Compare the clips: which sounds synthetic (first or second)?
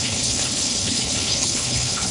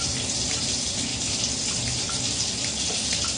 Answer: first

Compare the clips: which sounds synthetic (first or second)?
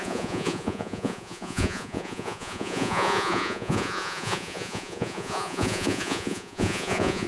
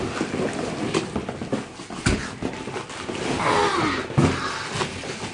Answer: first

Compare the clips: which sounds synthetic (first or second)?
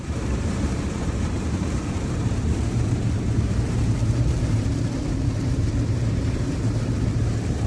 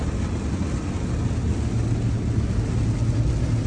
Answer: first